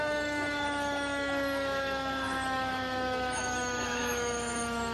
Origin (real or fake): fake